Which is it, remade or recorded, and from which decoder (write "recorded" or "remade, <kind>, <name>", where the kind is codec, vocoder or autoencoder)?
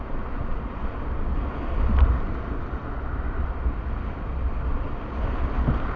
recorded